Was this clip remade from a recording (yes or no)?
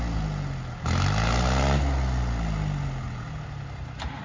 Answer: no